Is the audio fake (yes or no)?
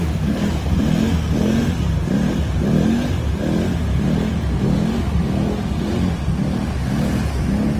no